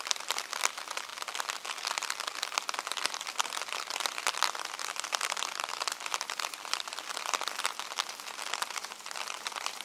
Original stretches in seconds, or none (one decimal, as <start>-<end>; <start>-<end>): 0.0-9.8